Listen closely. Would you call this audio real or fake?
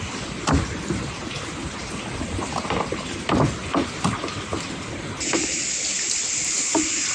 real